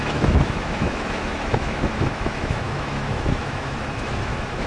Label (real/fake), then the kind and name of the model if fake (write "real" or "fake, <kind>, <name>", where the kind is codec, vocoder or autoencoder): fake, autoencoder, DAC-VAE